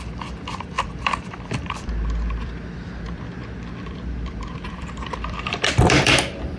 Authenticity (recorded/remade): remade